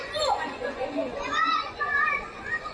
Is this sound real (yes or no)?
no